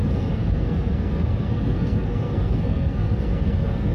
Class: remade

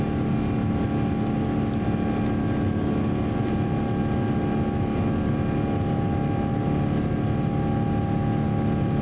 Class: recorded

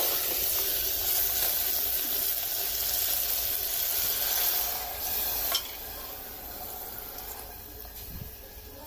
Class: recorded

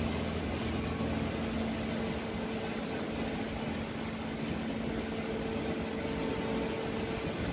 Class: recorded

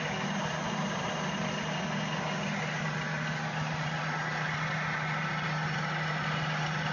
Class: recorded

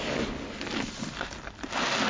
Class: recorded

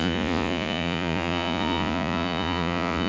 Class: remade